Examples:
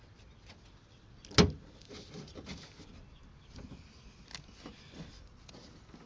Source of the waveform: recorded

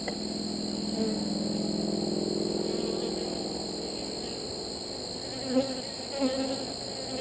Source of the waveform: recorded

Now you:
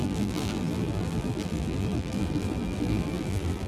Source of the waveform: remade